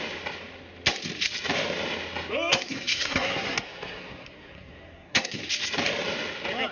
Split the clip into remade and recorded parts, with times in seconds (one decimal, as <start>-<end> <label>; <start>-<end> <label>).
0.0-2.5 recorded; 2.5-5.4 remade; 5.4-6.7 recorded